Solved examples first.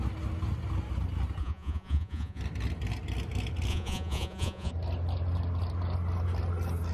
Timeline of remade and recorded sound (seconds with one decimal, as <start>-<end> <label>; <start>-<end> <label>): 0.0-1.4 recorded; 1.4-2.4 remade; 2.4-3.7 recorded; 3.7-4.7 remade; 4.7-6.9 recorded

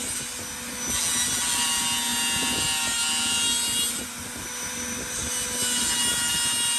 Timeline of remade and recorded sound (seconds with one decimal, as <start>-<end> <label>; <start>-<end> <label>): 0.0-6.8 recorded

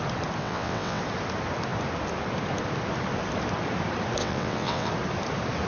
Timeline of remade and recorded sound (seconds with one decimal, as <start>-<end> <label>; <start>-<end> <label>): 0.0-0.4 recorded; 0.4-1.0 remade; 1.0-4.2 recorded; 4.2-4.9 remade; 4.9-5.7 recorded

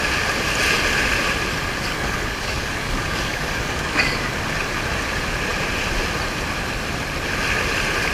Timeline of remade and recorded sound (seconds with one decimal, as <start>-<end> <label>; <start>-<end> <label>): 0.0-1.9 recorded; 1.9-4.2 remade; 4.2-8.1 recorded